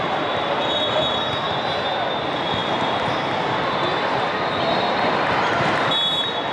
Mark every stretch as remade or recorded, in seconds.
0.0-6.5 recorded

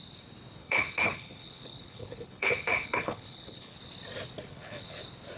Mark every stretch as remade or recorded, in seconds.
0.0-0.6 recorded; 0.6-3.8 remade; 3.8-4.5 recorded; 4.5-5.0 remade; 5.0-5.4 recorded